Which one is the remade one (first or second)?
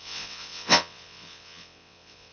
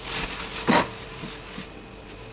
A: first